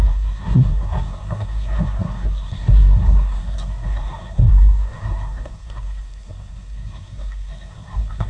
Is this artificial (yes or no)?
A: yes